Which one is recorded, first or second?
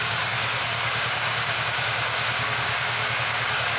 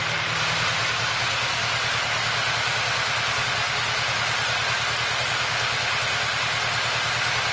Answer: second